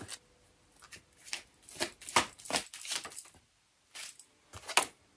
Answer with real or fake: real